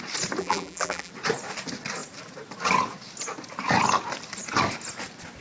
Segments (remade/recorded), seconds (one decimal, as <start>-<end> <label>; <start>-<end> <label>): 0.0-0.4 recorded; 0.4-1.1 remade; 1.1-5.4 recorded